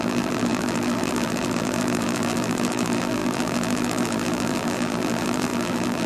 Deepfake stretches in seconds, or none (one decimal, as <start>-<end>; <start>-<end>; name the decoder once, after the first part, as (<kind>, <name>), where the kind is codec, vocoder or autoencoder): 0.0-6.1 (vocoder, BigVGAN v2)